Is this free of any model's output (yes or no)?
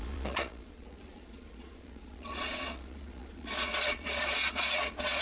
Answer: no